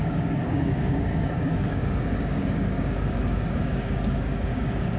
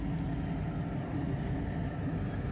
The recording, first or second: second